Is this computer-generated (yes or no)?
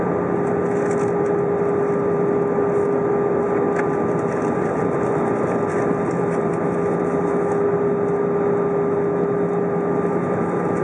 no